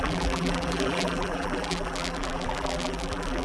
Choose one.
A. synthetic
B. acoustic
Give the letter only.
A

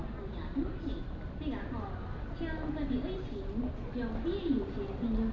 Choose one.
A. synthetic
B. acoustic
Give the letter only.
B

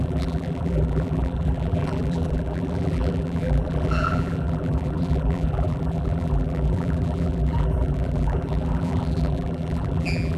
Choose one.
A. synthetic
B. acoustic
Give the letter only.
A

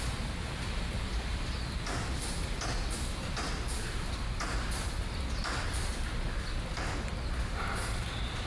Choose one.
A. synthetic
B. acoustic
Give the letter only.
A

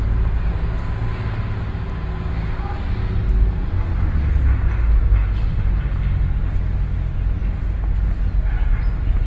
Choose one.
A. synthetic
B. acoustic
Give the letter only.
B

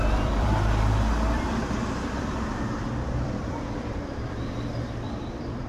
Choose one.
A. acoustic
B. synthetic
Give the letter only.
B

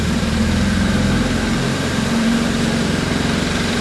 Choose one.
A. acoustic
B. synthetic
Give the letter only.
B